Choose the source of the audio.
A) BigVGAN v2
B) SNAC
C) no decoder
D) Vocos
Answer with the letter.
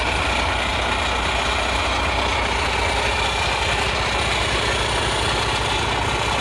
C